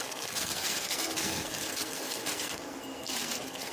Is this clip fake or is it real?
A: fake